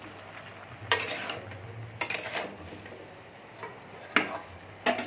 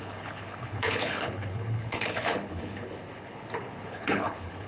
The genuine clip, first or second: first